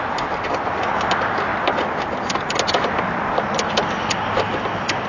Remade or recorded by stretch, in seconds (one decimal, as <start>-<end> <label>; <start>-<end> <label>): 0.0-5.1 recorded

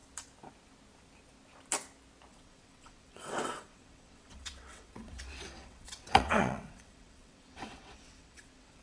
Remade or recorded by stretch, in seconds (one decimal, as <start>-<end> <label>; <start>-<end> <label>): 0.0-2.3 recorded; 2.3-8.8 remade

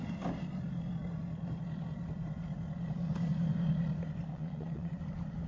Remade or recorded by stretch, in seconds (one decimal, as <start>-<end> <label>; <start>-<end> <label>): 0.0-4.3 recorded; 4.3-5.0 remade; 5.0-5.5 recorded

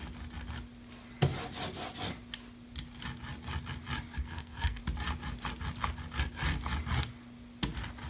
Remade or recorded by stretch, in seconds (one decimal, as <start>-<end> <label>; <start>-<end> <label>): 0.0-4.2 recorded; 4.2-4.8 remade; 4.8-8.1 recorded